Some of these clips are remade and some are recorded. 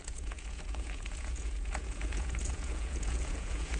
remade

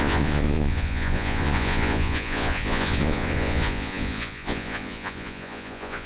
remade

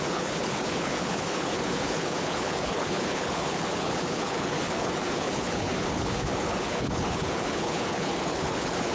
remade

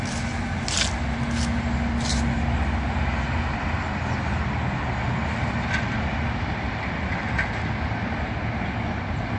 recorded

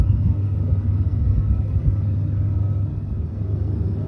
remade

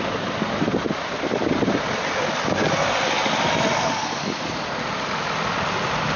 recorded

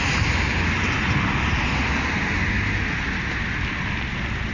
recorded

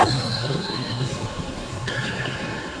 remade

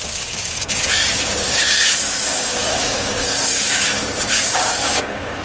remade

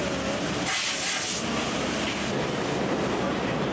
recorded